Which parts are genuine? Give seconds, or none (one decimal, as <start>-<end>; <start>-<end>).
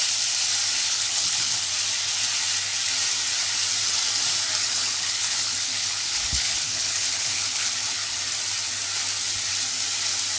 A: 0.0-0.8; 1.7-4.6; 8.2-10.4